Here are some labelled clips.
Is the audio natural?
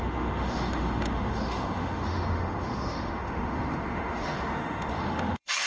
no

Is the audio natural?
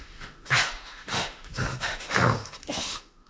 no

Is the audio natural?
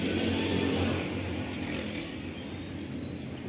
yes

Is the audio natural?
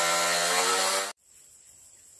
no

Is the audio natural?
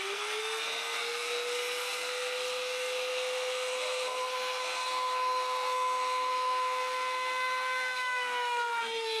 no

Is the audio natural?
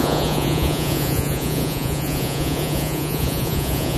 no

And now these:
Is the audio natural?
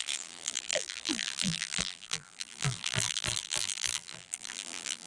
no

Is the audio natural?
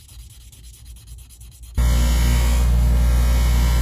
yes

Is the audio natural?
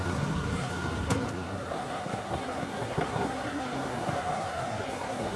no